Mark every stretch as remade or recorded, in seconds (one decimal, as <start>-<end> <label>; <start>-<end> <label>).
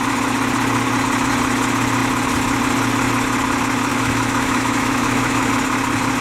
0.0-3.9 recorded; 3.9-5.5 remade; 5.5-6.2 recorded